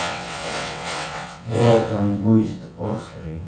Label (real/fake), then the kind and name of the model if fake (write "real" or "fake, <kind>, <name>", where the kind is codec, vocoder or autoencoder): fake, vocoder, WaveNeXt